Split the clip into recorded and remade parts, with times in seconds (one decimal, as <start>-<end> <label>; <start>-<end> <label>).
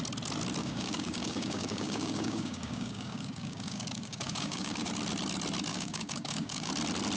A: 0.0-0.6 recorded; 0.6-4.9 remade; 4.9-5.7 recorded; 5.7-6.7 remade; 6.7-7.2 recorded